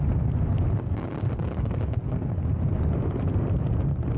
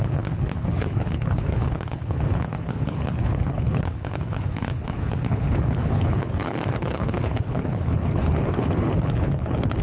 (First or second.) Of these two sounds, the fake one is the second